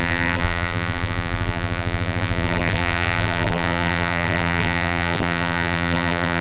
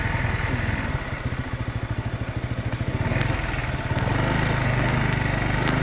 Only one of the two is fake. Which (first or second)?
first